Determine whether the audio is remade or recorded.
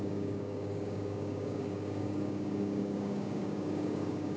remade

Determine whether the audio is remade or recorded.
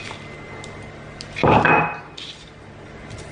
recorded